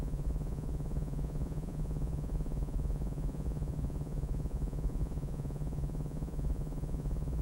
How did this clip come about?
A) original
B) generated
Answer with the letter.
B